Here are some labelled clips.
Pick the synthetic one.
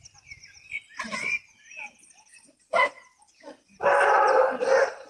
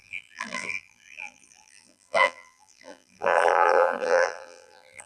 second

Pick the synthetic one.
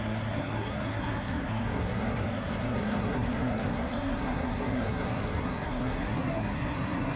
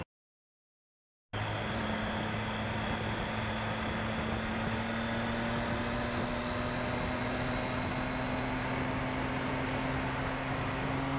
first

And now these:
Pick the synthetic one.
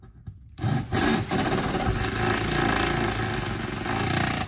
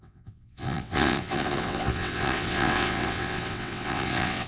second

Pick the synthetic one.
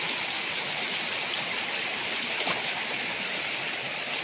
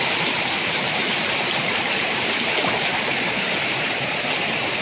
second